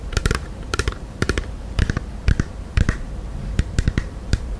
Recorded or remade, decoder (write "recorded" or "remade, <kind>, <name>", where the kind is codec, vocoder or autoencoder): remade, vocoder, BigVGAN v2